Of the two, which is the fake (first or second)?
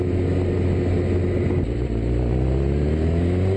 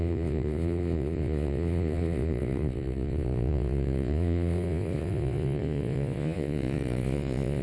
second